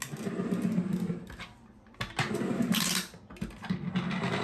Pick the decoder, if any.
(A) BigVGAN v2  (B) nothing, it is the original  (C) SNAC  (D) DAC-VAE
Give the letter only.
B